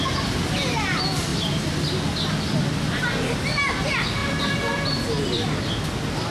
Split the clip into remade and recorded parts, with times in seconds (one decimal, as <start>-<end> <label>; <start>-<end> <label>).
0.0-4.2 recorded; 4.2-5.7 remade; 5.7-6.3 recorded